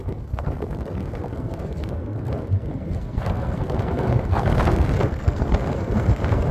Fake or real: fake